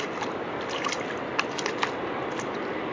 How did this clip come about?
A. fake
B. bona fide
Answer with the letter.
B